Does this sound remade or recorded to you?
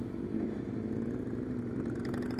recorded